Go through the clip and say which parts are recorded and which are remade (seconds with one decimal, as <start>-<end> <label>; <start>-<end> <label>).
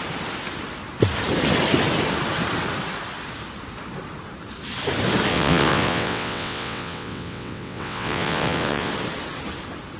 0.0-5.3 recorded; 5.3-8.9 remade; 8.9-10.0 recorded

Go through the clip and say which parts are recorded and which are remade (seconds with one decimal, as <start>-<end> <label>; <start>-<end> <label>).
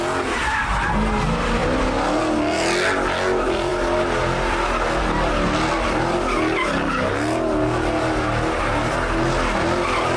0.0-10.2 recorded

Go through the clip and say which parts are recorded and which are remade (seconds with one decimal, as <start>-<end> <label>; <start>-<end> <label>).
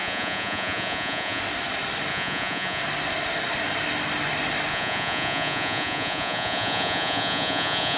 0.0-1.4 remade; 1.4-2.1 recorded; 2.1-2.8 remade; 2.8-4.7 recorded; 4.7-8.0 remade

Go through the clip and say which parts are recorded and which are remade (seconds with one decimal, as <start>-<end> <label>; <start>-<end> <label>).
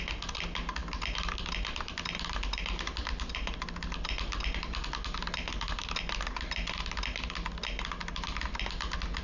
0.0-9.2 recorded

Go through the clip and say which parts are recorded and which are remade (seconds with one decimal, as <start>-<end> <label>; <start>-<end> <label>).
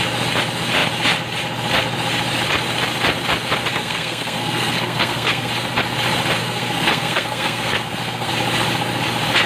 0.0-3.7 recorded; 3.7-5.5 remade; 5.5-6.4 recorded; 6.4-8.3 remade; 8.3-9.5 recorded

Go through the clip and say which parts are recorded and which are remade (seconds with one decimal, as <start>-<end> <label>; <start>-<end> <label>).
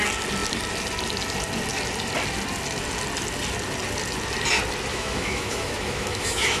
0.0-4.9 recorded; 4.9-6.6 remade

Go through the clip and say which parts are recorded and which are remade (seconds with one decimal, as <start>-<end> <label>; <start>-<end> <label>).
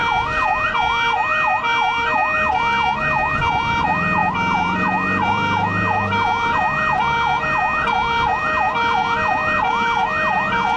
0.0-3.0 recorded; 3.0-10.8 remade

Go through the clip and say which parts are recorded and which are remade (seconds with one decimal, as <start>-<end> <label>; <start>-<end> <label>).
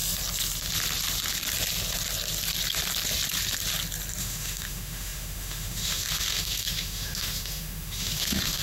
0.0-4.2 recorded; 4.2-8.6 remade